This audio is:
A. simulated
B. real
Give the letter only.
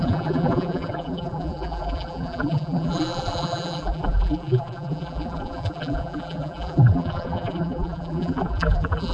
A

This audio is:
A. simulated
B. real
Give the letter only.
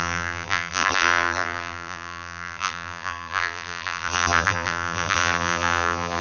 A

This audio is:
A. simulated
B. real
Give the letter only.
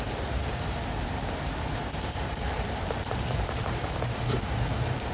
A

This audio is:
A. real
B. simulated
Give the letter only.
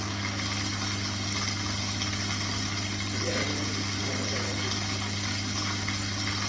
A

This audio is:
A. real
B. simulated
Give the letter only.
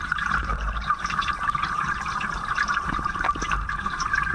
B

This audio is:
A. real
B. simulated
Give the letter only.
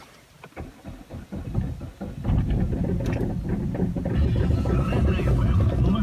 A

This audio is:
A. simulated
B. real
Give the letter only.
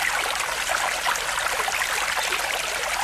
A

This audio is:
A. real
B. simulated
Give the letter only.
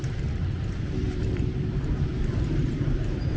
B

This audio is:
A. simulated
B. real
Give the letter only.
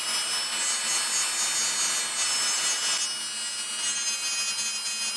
B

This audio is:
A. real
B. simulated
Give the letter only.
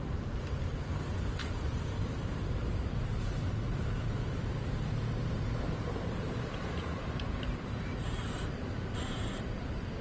B